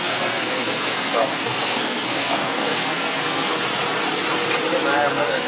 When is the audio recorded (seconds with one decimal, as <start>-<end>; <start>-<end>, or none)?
3.5-5.1